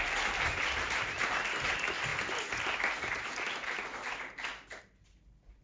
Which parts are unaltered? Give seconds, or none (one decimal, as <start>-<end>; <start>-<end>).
0.0-5.6